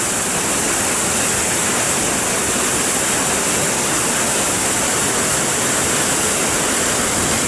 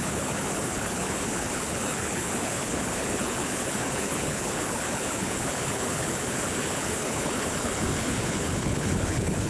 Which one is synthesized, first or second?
second